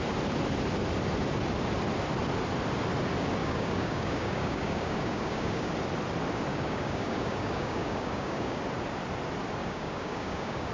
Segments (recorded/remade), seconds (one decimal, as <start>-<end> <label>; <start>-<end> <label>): 0.0-3.4 recorded; 3.4-5.7 remade; 5.7-6.5 recorded; 6.5-8.6 remade; 8.6-9.6 recorded; 9.6-10.7 remade